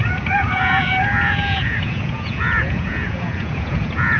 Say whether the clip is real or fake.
fake